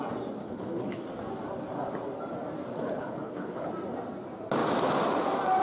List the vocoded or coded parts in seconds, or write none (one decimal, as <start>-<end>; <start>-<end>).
0.4-1.0; 2.7-3.7